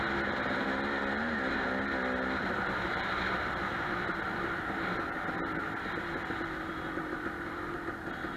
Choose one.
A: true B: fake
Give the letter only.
A